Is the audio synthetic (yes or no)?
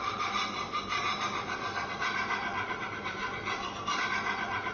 yes